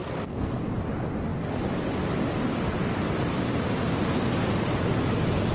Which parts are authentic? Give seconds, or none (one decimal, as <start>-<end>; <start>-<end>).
0.6-5.5

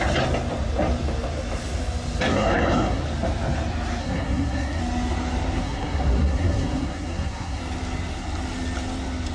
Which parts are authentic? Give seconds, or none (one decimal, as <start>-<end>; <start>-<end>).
0.0-2.3; 3.0-4.0; 4.8-5.6; 7.6-9.3

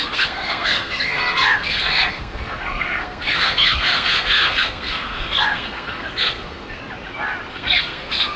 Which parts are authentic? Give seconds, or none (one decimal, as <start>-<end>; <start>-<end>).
6.8-7.5

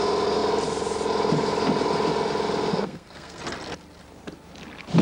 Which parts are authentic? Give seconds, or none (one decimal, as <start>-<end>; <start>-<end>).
0.0-2.7; 3.4-5.0

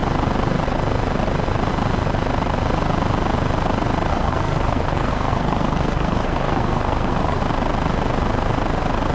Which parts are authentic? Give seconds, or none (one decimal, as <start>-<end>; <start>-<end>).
0.0-4.1; 7.4-9.1

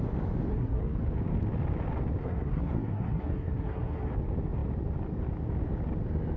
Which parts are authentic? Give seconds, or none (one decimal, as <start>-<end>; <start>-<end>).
0.0-0.5; 1.0-2.2; 4.1-6.4